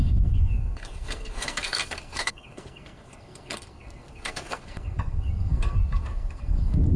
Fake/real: fake